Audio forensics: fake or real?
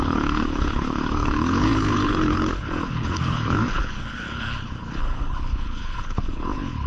fake